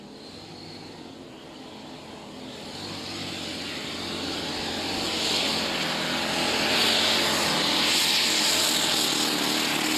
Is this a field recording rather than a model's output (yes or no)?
yes